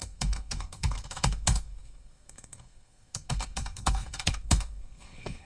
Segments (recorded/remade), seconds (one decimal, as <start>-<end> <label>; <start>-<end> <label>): 0.0-5.4 remade